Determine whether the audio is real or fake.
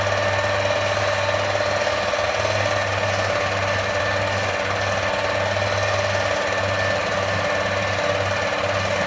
real